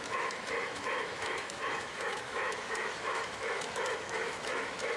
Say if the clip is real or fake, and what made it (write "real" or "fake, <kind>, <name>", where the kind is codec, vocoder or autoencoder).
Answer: fake, autoencoder, DAC-VAE